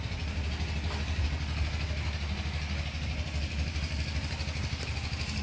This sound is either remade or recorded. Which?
recorded